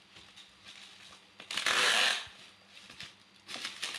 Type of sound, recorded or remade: recorded